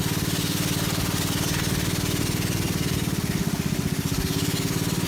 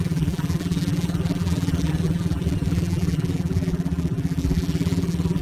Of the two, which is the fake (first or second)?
second